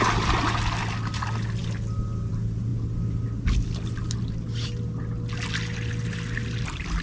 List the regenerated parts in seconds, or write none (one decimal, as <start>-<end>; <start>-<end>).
none